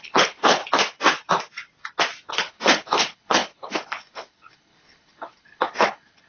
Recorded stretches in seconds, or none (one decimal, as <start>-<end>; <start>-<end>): 0.6-2.3